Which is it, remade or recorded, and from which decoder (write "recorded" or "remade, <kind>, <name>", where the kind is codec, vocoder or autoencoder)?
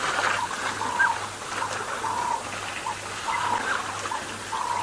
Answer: remade, vocoder, BigVGAN v2